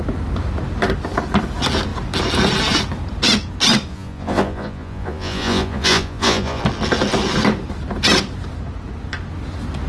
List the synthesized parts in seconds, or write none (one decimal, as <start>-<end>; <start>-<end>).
3.9-6.6